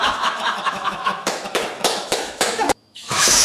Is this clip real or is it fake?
fake